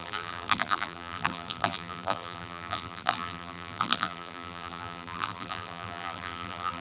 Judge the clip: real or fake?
fake